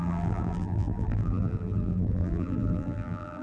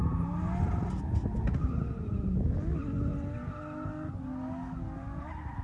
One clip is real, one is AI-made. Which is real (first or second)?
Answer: second